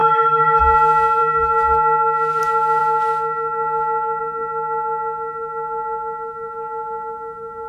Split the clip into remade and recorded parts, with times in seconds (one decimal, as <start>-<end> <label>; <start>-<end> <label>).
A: 0.0-0.6 remade; 0.6-7.7 recorded